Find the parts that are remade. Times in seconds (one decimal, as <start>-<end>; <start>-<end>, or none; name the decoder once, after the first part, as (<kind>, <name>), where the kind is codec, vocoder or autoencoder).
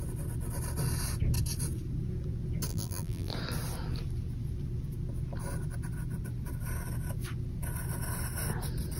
2.7-3.3 (vocoder, BigVGAN v2)